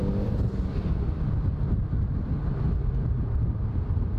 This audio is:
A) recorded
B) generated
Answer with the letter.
A